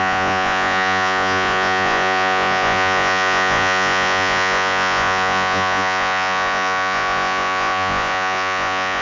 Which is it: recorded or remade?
remade